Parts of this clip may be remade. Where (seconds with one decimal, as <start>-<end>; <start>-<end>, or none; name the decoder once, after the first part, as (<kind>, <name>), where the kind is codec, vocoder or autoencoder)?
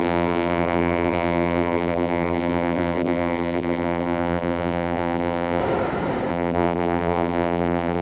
0.0-5.6 (vocoder, BigVGAN v2); 6.3-8.0